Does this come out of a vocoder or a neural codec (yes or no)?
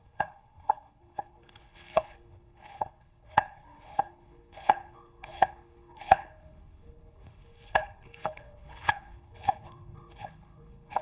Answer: yes